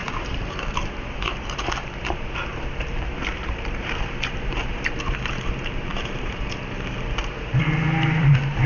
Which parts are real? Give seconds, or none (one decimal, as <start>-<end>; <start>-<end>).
none

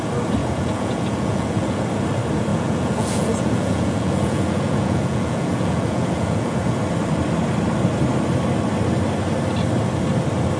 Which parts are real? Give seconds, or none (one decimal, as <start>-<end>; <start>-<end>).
0.0-0.4; 1.8-2.5; 6.8-10.6

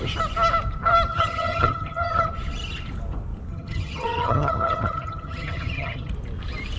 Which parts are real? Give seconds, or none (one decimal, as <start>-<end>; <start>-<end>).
0.0-1.1; 2.3-3.5; 6.1-6.8

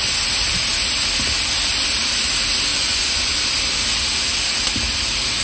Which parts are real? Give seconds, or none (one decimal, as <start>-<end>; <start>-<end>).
0.0-2.7; 3.3-5.4

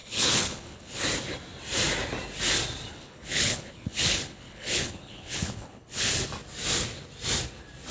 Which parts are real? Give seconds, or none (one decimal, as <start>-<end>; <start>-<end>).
1.0-2.9; 6.1-7.9

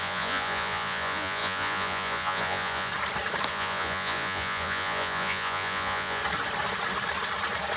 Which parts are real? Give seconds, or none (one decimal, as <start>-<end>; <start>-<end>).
2.9-3.5; 6.2-7.8

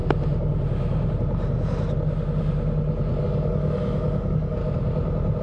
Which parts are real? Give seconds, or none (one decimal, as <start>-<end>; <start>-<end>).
0.0-3.2; 4.6-5.4

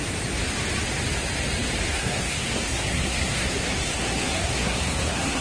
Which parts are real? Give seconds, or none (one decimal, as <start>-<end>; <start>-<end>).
0.0-1.9